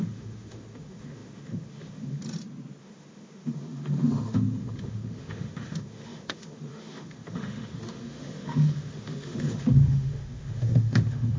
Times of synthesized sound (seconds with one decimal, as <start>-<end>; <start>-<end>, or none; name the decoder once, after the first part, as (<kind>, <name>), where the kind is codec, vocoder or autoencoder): 0.0-2.2 (autoencoder, DAC-VAE); 2.8-11.4